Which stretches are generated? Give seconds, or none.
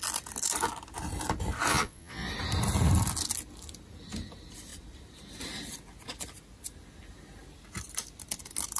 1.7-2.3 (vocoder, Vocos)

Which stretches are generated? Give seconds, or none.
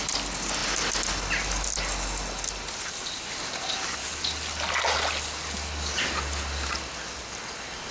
none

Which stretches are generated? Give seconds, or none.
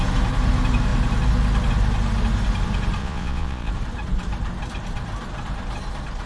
3.0-3.7 (vocoder, Vocos)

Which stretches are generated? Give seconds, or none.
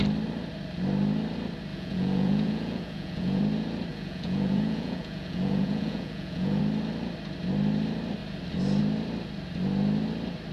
1.7-3.4 (vocoder, Vocos); 3.9-6.6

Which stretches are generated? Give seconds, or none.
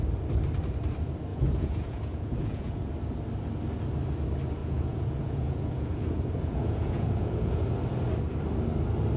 1.3-2.9 (vocoder, Vocos); 4.6-7.6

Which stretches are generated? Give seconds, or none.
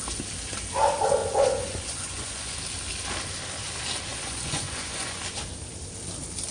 1.2-2.6 (vocoder, Vocos); 4.1-5.2